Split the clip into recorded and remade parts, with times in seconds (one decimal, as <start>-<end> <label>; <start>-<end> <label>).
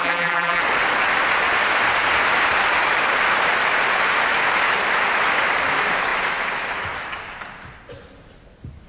0.0-0.6 remade; 0.6-8.9 recorded